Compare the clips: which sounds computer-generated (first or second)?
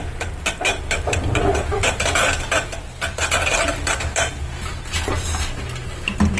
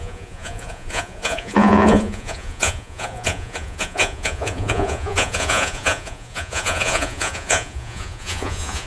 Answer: second